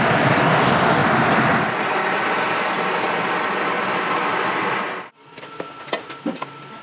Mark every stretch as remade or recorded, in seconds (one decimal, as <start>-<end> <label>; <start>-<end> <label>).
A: 0.0-6.8 recorded